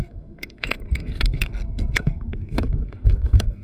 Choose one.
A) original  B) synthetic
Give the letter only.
B